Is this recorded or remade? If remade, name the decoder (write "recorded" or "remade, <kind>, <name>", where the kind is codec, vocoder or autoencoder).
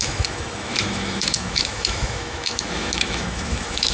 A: remade, autoencoder, DAC-VAE